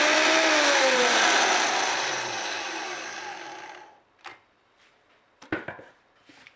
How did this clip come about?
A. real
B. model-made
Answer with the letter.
A